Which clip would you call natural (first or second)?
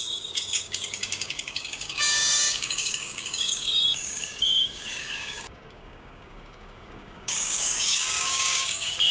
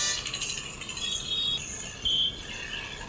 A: second